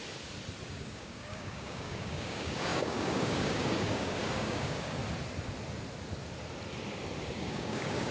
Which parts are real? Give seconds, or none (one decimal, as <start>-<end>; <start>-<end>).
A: 0.0-0.7; 5.0-7.3